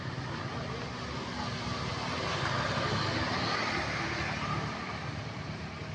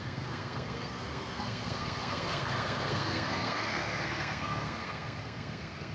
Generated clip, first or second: second